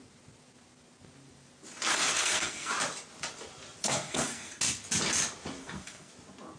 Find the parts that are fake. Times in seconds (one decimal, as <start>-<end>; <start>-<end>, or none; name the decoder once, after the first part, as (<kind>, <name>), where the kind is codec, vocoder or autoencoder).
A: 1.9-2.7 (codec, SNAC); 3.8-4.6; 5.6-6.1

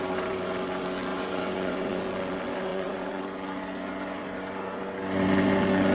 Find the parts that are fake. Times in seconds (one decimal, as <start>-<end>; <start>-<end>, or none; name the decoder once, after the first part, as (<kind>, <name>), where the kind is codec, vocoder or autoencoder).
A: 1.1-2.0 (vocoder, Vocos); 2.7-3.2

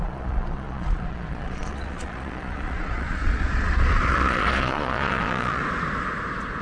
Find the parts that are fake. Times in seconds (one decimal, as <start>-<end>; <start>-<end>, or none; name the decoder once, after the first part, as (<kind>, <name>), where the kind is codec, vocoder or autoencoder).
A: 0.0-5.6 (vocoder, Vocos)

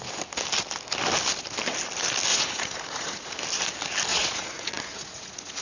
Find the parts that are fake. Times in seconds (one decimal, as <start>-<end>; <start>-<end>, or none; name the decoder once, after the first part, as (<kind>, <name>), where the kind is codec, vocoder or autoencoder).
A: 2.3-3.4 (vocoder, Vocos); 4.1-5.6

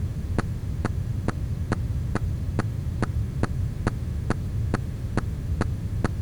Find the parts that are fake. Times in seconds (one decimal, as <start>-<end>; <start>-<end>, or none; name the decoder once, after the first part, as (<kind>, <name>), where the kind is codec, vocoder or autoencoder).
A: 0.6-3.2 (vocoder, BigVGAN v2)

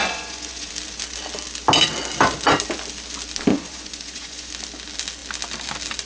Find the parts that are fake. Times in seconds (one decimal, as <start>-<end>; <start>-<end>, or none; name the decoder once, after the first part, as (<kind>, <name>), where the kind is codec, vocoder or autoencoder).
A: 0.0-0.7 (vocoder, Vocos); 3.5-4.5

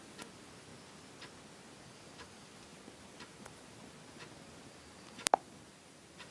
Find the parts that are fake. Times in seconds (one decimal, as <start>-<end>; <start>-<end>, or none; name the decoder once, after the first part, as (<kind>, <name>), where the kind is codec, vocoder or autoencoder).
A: 0.7-1.9 (vocoder, BigVGAN v2)